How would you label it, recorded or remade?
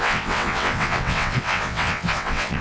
remade